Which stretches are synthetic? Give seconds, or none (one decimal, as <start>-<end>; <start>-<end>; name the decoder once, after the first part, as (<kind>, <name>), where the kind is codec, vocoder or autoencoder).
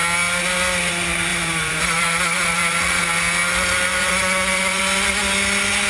1.3-3.0 (vocoder, Vocos); 3.9-4.8